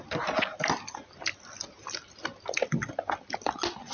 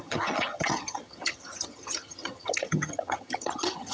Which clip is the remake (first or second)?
second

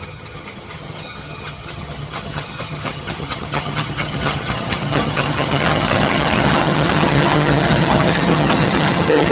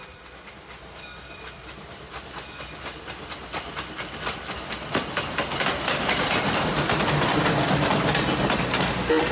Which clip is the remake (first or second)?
first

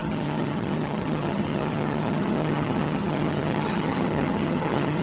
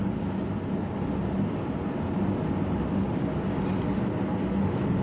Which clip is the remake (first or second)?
first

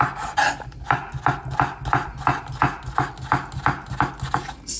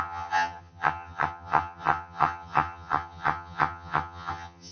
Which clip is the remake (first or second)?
second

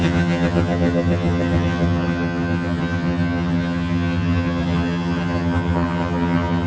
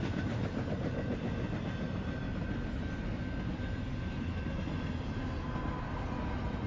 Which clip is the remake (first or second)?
first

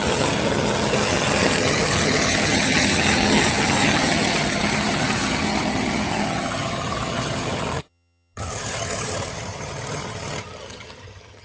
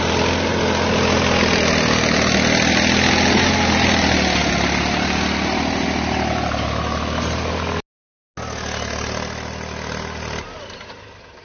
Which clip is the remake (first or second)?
first